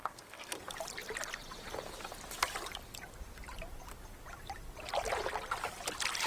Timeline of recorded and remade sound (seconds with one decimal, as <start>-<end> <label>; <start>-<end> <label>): 0.0-0.6 remade; 0.6-6.3 recorded